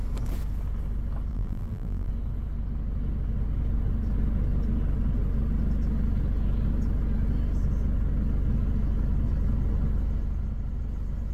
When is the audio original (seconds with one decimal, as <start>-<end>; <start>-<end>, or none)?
0.0-1.3; 2.1-11.3